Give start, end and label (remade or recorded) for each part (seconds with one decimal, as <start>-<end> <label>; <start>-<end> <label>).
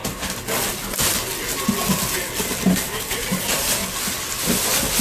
0.0-5.0 recorded